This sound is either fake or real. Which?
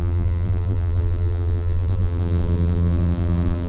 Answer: fake